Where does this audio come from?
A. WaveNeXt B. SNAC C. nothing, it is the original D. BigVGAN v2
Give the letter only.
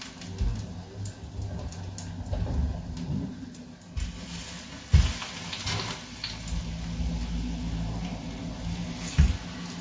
C